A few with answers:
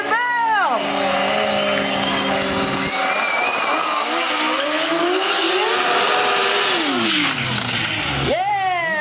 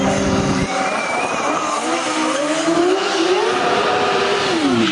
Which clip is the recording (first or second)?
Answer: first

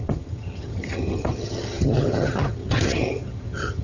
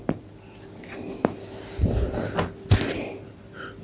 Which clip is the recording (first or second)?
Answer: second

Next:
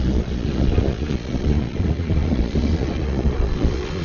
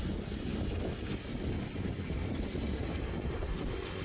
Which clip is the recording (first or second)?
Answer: second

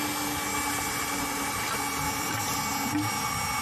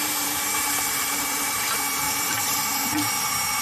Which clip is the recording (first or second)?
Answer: first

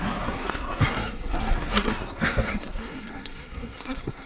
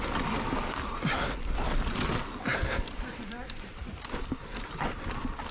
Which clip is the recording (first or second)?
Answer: second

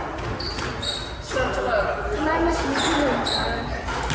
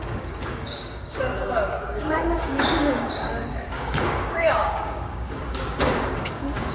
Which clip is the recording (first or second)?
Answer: first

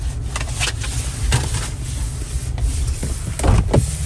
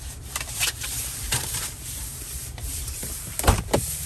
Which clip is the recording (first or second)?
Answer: first